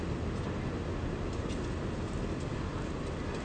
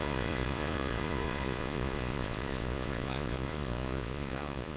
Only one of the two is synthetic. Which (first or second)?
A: second